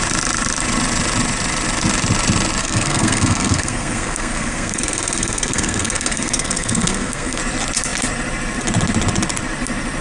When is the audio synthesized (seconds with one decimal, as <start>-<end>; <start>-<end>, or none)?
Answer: 2.6-7.4